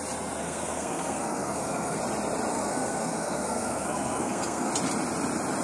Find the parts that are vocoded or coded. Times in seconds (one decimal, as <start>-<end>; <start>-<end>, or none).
0.4-2.0; 2.5-4.7